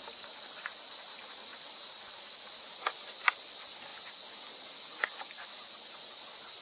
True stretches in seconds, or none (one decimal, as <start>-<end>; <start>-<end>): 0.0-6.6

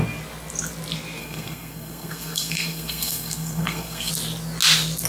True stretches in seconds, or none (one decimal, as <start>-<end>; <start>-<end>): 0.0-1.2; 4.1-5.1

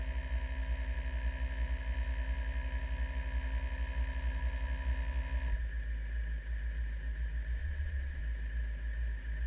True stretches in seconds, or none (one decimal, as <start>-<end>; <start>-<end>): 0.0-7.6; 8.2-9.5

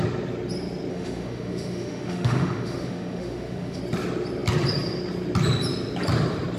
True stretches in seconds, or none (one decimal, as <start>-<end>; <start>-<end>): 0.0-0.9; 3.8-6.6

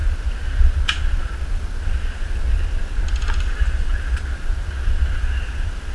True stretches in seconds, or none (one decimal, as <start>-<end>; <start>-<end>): 0.0-5.9